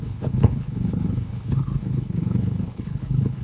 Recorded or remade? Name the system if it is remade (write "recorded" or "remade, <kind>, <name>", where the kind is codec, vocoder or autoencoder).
remade, codec, HILCodec